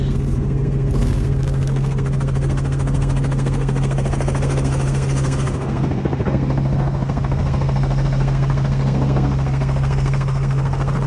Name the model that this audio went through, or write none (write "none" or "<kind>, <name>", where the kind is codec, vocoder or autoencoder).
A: codec, SNAC